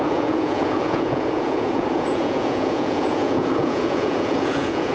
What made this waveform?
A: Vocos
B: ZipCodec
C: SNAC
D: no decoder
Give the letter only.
A